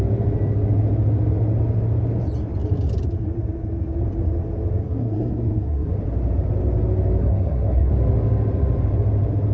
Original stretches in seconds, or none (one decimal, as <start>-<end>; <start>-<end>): 0.0-4.8; 6.0-7.2; 7.9-9.5

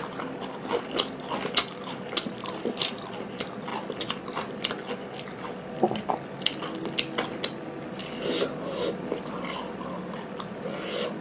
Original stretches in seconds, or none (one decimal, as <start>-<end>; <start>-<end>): 0.0-11.2

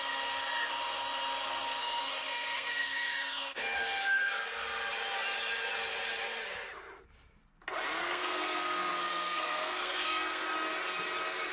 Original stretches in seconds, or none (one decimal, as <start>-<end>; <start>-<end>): 0.0-1.8; 4.3-8.0; 10.4-11.5

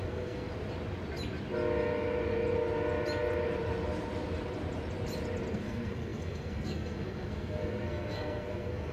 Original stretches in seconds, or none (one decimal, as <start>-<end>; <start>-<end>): 0.5-5.5

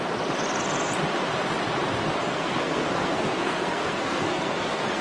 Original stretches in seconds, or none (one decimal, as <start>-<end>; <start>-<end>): 0.0-2.2